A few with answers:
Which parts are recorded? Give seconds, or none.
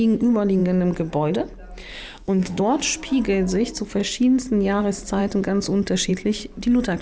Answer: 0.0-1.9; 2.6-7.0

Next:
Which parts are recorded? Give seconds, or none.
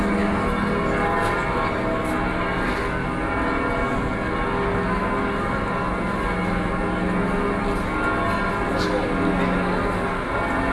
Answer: 0.0-10.7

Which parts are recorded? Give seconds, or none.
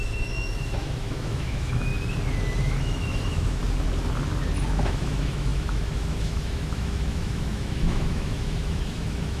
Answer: 1.9-2.6; 3.6-4.7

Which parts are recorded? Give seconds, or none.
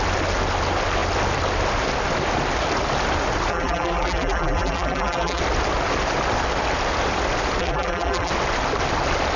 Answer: 0.0-3.5; 5.4-7.6; 8.3-9.4